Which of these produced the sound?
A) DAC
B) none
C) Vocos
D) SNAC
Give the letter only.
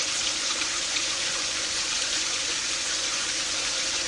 C